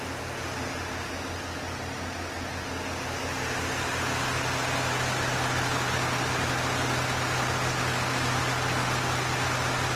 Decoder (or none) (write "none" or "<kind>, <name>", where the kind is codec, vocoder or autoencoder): none